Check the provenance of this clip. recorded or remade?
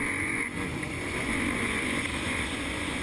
remade